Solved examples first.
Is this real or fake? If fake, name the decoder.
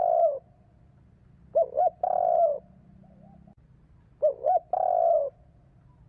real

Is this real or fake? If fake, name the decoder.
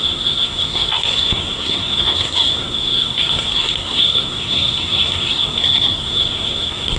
fake, codec, SNAC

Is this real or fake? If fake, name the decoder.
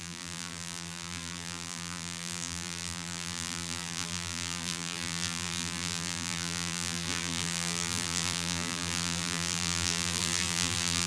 fake, vocoder, BigVGAN v2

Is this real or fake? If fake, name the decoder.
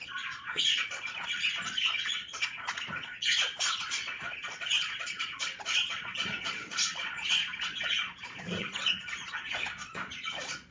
fake, vocoder, Vocos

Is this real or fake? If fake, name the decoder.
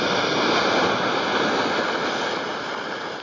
real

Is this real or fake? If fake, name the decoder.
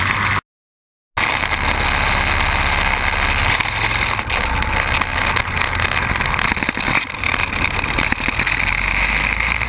real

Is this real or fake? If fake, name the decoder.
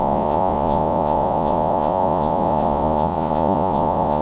fake, vocoder, Vocos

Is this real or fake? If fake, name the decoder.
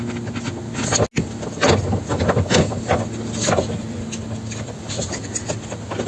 real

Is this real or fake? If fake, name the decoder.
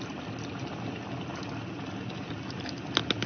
real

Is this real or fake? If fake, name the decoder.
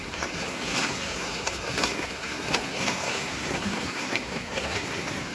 fake, codec, SNAC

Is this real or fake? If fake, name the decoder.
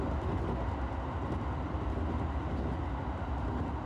real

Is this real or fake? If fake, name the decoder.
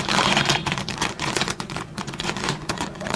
fake, vocoder, Vocos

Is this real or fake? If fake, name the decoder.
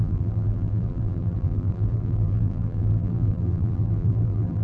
fake, vocoder, BigVGAN v2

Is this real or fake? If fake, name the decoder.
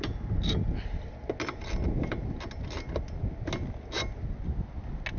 real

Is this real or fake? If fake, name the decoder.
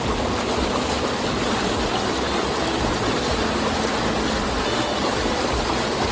real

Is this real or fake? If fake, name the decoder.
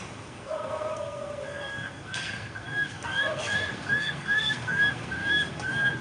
fake, codec, SNAC